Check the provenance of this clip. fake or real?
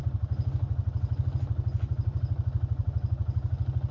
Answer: real